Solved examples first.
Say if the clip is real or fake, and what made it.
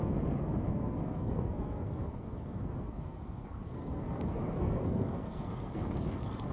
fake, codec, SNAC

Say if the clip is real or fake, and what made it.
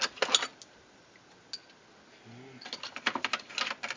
real